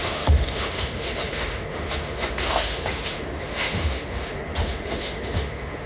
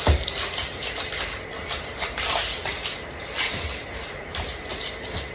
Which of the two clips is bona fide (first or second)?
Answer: second